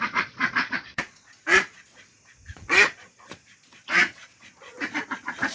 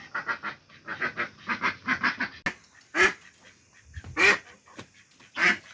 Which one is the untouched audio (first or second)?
second